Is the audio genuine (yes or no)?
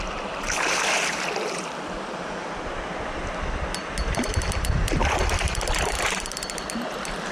no